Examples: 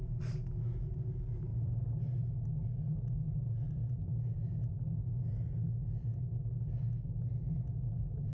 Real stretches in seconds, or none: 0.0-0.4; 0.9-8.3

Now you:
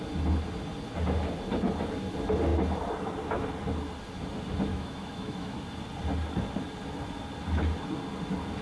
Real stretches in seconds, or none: 0.0-4.7; 5.6-8.6

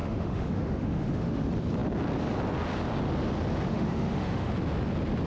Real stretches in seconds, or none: 1.4-3.7; 4.5-5.3

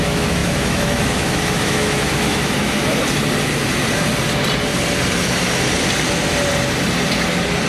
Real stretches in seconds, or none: 2.8-7.7

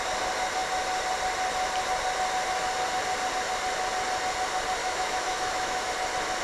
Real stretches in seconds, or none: 0.0-4.8; 5.9-6.4

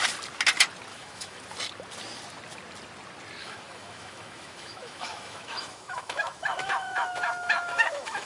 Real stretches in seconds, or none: 0.0-0.9; 1.4-3.4

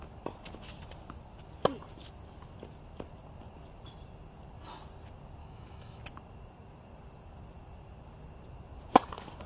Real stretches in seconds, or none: 0.0-5.4; 6.0-9.5